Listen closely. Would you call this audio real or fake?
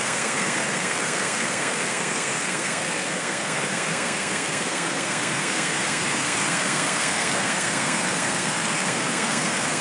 fake